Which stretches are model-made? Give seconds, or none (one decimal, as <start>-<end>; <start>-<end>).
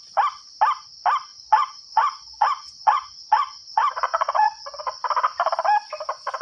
1.3-4.8